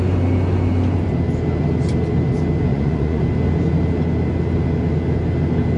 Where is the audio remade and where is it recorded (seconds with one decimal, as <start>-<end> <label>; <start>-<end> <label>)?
0.0-2.7 recorded; 2.7-3.2 remade; 3.2-5.8 recorded